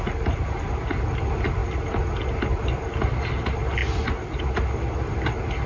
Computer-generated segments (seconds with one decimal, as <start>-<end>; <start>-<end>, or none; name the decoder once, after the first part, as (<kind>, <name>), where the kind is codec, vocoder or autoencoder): none